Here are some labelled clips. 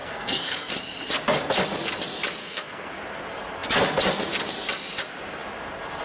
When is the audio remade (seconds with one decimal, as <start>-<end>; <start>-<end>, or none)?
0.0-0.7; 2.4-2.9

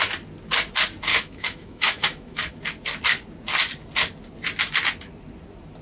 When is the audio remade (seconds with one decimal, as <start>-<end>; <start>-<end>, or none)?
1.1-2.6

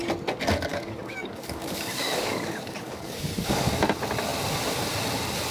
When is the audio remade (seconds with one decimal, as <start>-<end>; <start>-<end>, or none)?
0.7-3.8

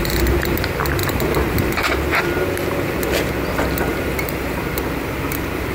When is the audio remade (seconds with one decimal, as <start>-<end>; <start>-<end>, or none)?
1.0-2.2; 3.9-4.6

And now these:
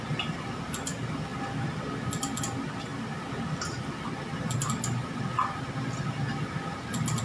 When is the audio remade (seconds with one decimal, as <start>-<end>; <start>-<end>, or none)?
none

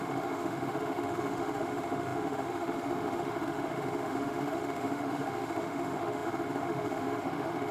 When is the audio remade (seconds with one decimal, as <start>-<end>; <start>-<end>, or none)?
0.0-7.7